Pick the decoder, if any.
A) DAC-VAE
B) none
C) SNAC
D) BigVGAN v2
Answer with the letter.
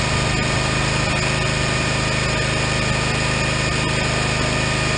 B